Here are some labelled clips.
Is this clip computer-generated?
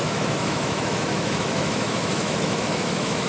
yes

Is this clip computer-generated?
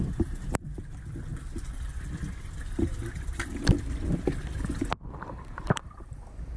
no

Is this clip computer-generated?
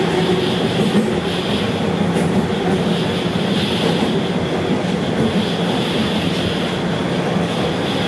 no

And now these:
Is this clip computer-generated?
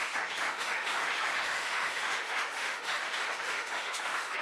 yes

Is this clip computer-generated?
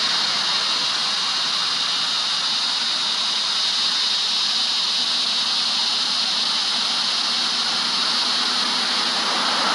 no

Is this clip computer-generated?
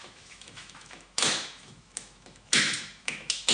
yes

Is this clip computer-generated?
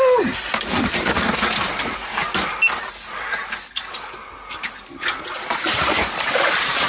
no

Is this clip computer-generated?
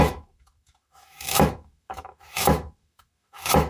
yes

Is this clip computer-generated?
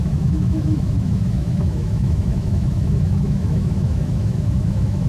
yes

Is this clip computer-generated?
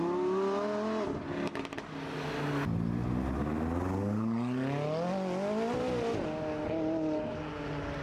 no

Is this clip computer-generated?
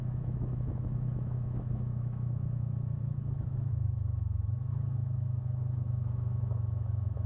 yes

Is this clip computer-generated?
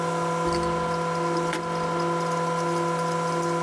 no